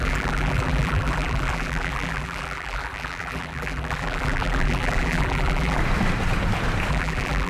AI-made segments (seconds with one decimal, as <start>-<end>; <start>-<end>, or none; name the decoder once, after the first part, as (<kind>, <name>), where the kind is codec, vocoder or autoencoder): 0.0-5.8 (vocoder, BigVGAN v2); 6.9-7.5